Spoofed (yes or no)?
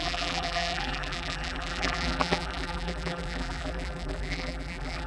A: yes